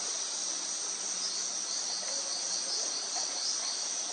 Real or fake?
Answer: real